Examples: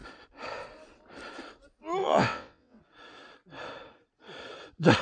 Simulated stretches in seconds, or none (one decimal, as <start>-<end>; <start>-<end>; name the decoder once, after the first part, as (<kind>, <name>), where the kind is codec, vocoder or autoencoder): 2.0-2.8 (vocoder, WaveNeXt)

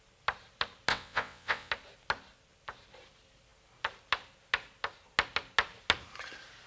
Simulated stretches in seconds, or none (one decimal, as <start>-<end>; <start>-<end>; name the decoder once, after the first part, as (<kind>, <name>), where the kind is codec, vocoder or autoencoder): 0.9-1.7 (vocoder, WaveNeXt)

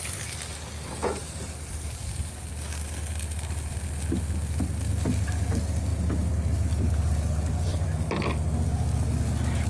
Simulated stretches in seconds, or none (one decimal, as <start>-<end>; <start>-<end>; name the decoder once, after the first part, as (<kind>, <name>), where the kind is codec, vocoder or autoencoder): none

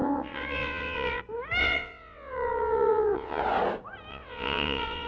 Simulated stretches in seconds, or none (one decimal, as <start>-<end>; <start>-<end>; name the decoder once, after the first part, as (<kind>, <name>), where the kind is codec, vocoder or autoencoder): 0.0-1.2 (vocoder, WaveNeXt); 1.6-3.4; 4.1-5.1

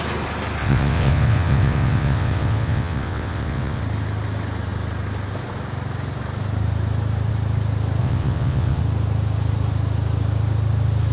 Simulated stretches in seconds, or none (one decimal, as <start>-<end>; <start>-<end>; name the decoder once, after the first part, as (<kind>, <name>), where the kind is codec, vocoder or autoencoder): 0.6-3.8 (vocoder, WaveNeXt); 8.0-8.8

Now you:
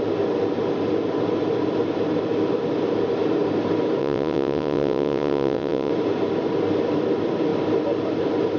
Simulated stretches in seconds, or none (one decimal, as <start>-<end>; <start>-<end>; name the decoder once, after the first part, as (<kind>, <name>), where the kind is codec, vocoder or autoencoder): 4.0-5.9 (vocoder, WaveNeXt)

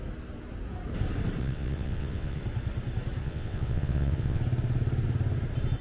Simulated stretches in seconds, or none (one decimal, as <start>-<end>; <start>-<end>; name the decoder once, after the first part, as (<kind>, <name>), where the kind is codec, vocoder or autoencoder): 1.4-2.4 (vocoder, WaveNeXt); 3.2-4.4

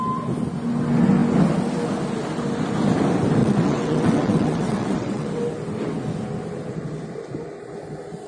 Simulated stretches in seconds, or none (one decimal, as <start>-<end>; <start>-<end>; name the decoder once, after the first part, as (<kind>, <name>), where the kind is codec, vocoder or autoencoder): 3.4-5.3 (vocoder, WaveNeXt)